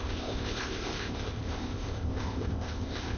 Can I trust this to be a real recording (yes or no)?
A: no